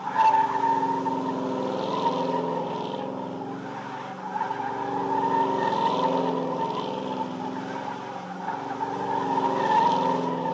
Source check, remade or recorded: recorded